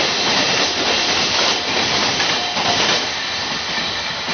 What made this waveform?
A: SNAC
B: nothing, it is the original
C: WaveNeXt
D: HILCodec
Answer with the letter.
B